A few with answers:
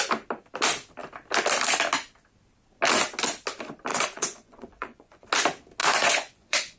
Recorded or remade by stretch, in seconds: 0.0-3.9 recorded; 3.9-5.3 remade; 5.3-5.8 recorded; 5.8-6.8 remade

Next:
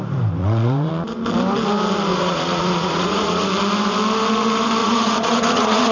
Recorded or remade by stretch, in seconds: 0.0-0.4 recorded; 0.4-0.9 remade; 0.9-2.1 recorded; 2.1-3.5 remade; 3.5-4.8 recorded; 4.8-5.9 remade

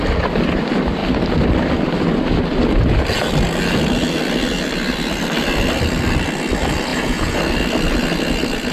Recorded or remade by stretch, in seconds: 0.0-6.9 recorded; 6.9-7.4 remade; 7.4-8.7 recorded

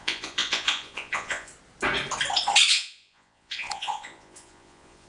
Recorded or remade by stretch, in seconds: 0.0-1.5 remade; 1.5-2.7 recorded; 2.7-5.1 remade

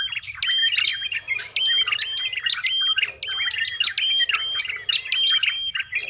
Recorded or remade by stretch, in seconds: 0.0-6.1 recorded

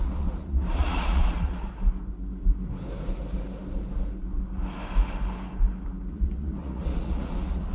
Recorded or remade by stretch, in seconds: 0.0-1.7 remade; 1.7-6.1 recorded; 6.1-7.7 remade

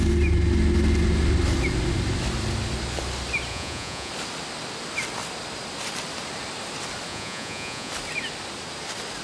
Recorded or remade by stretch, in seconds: 0.0-3.5 recorded; 3.5-4.1 remade; 4.1-7.1 recorded; 7.1-7.9 remade; 7.9-9.2 recorded

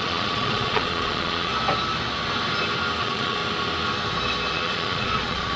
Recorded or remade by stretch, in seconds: 0.0-1.5 remade; 1.5-3.0 recorded; 3.0-3.4 remade; 3.4-4.5 recorded; 4.5-5.6 remade